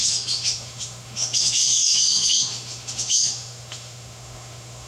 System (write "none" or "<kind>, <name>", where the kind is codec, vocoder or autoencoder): autoencoder, DAC-VAE